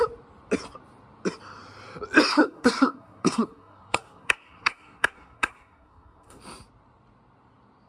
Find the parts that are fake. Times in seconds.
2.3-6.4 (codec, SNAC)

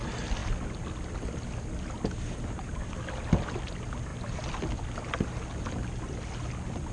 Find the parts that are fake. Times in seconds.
none